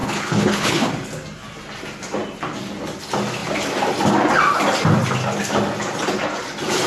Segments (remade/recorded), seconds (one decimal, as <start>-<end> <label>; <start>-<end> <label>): 0.0-0.9 remade; 0.9-6.9 recorded